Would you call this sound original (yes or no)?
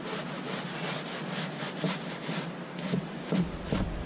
yes